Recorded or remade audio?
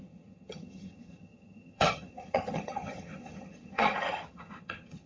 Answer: remade